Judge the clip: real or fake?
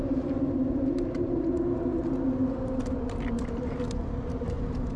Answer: real